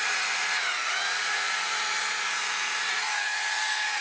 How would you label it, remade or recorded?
remade